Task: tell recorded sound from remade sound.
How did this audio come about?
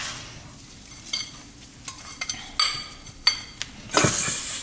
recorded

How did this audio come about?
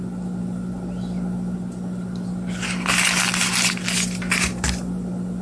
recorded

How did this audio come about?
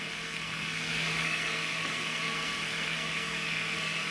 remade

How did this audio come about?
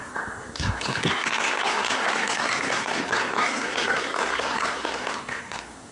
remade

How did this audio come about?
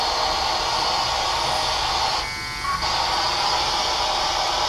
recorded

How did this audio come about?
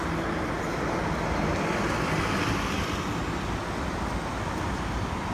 recorded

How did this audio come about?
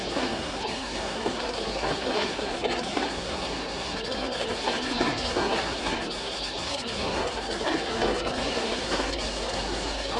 remade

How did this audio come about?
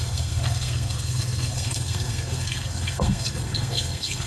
remade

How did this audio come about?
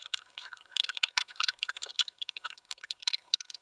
remade